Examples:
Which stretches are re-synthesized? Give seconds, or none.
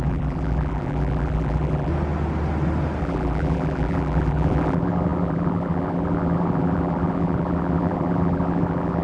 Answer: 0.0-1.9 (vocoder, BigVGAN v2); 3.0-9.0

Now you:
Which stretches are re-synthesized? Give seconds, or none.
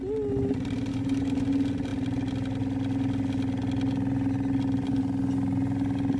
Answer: 0.9-1.5 (codec, DAC)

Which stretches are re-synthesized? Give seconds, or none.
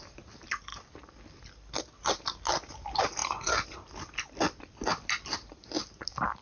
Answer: none